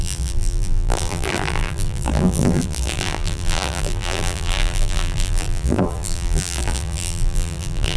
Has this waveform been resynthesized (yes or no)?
yes